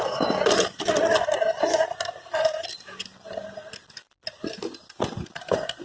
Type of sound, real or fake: real